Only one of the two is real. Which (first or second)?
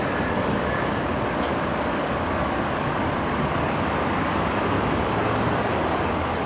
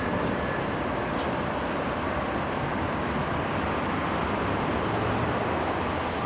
second